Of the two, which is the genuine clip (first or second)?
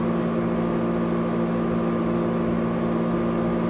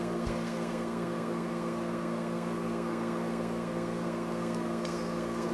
first